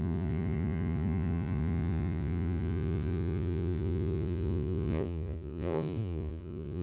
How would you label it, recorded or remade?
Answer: remade